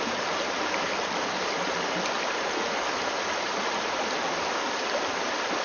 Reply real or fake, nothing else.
real